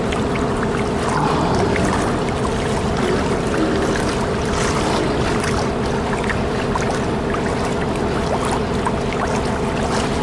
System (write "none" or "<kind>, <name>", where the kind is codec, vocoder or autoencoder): none